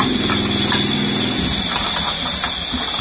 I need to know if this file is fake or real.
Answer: real